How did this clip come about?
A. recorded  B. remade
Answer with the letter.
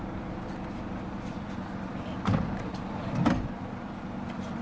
B